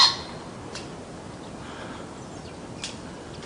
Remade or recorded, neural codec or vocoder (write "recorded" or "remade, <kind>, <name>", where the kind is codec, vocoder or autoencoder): recorded